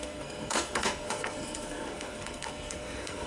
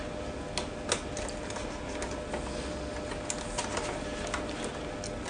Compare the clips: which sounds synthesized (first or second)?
first